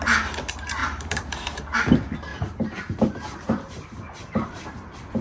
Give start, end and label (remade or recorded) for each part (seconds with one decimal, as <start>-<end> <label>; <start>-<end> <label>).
0.0-0.8 recorded; 0.8-1.8 remade; 1.8-2.3 recorded; 2.3-4.7 remade; 4.7-5.2 recorded